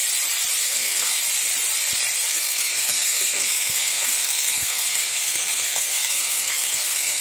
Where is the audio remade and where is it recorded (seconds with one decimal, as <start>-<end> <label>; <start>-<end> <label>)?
0.0-0.6 recorded; 0.6-1.2 remade; 1.2-2.3 recorded; 2.3-7.2 remade